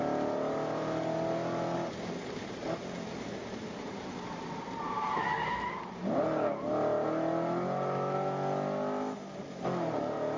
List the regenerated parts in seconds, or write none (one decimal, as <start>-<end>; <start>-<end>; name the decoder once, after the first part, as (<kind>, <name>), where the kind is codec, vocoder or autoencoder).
none

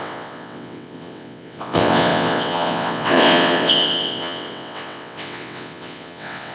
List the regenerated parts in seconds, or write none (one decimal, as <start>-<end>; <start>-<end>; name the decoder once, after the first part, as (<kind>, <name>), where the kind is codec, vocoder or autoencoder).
0.0-6.5 (vocoder, WaveNeXt)

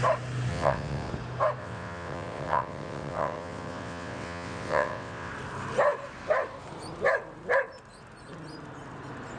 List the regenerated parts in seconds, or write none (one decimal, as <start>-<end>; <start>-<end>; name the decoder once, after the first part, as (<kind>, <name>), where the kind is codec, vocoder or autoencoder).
0.5-1.1 (vocoder, WaveNeXt); 1.6-5.3

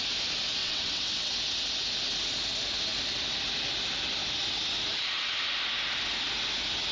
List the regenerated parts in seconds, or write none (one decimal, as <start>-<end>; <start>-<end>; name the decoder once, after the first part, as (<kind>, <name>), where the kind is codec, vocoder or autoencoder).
0.6-1.3 (vocoder, WaveNeXt)

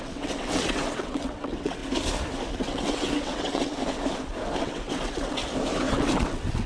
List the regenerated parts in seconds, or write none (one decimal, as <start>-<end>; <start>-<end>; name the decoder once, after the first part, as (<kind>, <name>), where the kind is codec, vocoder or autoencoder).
0.0-1.8 (vocoder, WaveNeXt); 2.5-3.8; 4.6-5.4; 5.9-6.7